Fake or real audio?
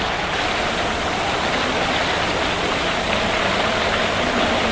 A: real